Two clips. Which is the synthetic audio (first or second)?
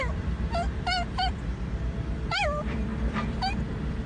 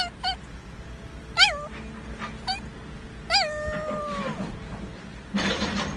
first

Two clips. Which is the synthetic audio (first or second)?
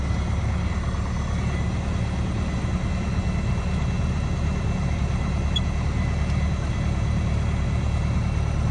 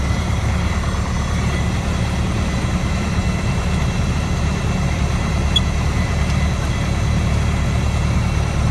second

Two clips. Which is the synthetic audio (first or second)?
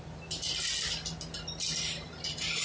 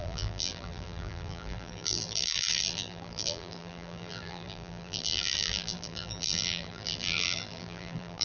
second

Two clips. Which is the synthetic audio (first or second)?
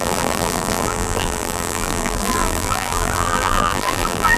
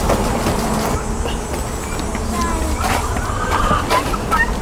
first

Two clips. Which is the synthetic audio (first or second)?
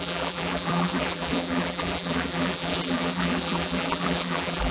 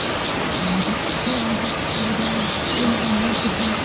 first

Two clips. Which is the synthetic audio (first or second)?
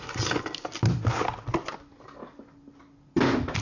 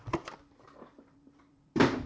second